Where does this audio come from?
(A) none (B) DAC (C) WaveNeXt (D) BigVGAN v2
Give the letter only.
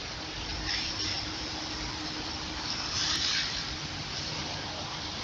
D